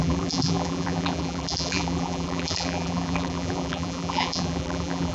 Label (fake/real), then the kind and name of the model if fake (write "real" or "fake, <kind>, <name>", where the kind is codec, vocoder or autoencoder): fake, vocoder, BigVGAN v2